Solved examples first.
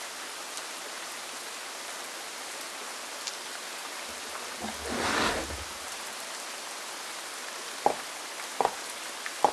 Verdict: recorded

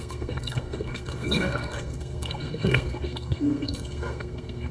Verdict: remade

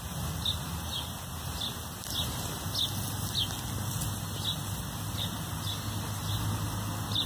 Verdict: recorded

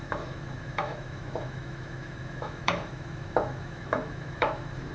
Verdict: remade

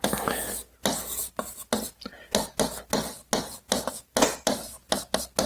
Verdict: recorded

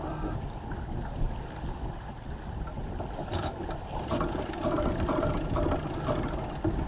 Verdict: recorded